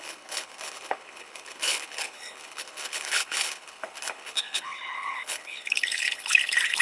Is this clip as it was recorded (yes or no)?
no